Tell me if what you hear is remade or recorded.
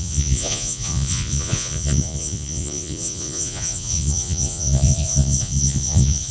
remade